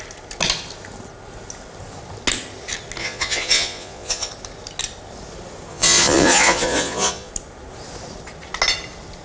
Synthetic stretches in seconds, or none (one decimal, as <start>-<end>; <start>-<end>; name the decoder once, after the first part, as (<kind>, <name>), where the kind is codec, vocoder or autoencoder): 3.0-4.3 (vocoder, Vocos); 5.7-7.3